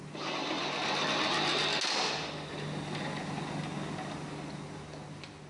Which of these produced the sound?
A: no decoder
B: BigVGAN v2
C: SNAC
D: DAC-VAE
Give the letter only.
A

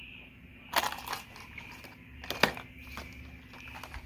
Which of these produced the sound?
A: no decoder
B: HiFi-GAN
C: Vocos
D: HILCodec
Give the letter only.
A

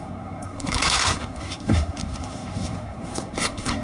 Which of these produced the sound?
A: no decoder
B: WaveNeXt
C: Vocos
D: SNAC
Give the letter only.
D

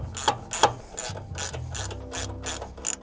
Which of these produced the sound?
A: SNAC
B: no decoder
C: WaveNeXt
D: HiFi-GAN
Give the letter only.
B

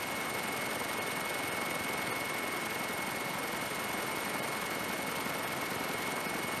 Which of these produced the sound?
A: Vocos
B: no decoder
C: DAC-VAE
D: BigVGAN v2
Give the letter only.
B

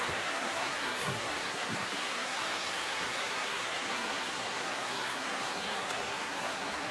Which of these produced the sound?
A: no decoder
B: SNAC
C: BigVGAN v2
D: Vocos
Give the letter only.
B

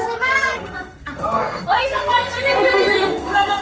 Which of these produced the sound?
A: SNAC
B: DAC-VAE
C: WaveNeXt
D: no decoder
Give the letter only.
A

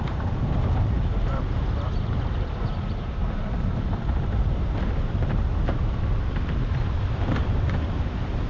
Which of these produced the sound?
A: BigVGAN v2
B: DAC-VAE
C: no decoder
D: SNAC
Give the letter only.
A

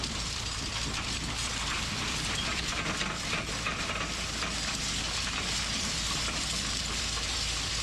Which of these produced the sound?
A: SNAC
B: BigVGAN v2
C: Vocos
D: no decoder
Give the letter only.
B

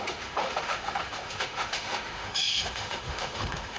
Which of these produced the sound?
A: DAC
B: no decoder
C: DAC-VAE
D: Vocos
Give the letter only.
C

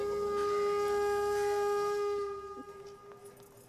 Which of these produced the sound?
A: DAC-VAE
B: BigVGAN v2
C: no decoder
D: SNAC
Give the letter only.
C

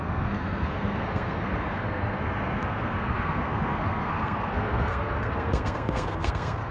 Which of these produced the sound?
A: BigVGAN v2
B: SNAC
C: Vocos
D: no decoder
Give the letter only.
B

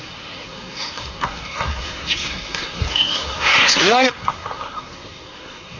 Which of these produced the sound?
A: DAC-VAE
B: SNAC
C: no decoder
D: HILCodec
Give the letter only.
B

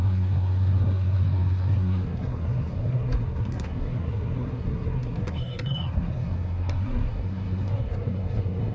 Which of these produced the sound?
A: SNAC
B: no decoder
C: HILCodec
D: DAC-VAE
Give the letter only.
A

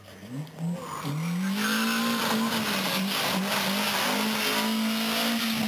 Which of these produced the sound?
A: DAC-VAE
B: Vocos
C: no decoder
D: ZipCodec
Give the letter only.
C